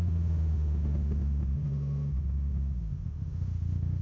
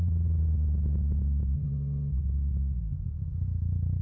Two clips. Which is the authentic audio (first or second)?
second